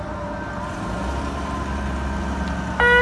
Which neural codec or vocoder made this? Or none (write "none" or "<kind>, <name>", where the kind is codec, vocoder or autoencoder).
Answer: none